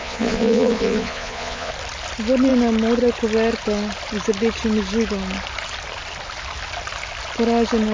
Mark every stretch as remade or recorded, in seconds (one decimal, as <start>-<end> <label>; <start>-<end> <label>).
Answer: 0.0-1.7 remade; 1.7-7.9 recorded